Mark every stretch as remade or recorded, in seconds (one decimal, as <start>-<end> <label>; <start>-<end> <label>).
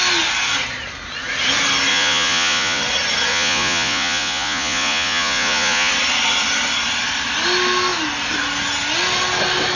0.0-1.9 recorded; 1.9-2.8 remade; 2.8-3.3 recorded; 3.3-5.9 remade; 5.9-9.8 recorded